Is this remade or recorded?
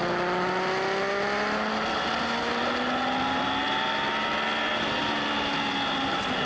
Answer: recorded